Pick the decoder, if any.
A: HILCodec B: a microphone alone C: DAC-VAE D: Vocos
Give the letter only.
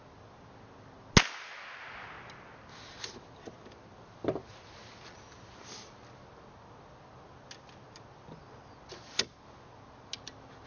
B